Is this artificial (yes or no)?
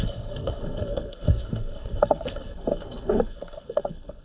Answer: yes